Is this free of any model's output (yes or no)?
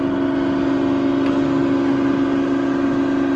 yes